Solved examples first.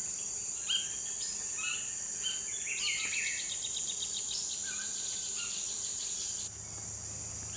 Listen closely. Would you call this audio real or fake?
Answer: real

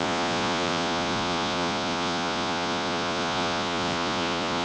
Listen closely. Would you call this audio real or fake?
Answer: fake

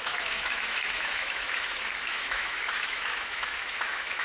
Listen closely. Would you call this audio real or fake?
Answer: fake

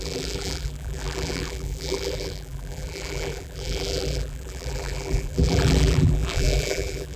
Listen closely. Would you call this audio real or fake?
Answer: fake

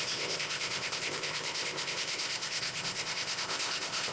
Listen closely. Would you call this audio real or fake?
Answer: fake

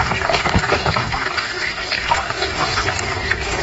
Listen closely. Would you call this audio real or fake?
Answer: fake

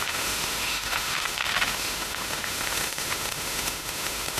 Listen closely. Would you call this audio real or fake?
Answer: fake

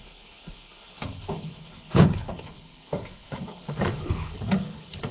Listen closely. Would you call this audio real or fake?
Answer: fake